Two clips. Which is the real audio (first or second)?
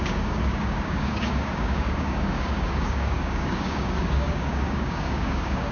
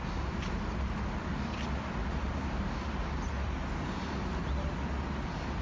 second